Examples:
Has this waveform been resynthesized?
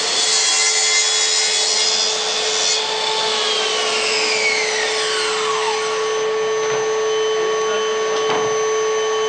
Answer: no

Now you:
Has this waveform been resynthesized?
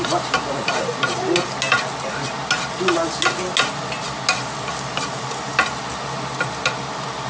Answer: no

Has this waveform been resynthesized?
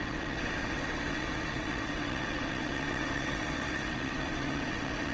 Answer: yes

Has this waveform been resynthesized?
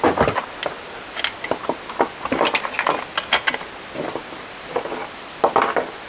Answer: no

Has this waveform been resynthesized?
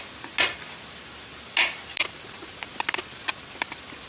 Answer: no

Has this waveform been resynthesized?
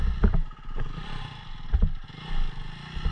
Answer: no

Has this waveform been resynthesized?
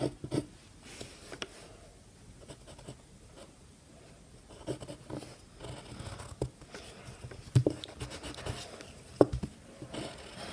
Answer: no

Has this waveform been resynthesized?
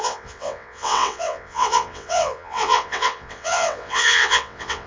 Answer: yes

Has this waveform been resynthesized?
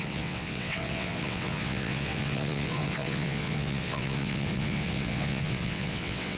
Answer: yes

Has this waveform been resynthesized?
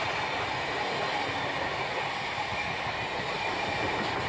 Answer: no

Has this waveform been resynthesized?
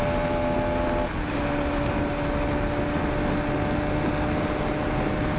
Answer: no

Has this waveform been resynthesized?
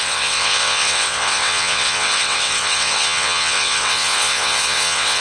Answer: yes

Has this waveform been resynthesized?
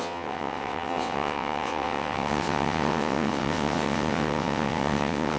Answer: yes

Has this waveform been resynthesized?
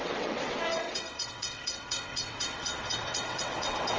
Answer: yes